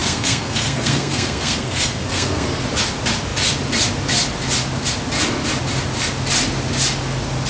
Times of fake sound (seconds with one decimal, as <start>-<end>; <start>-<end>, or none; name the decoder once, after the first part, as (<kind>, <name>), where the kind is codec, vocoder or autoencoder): 0.0-2.6 (codec, SNAC)